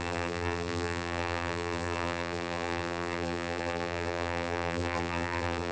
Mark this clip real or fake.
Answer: fake